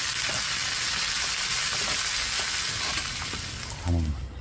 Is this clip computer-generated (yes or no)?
no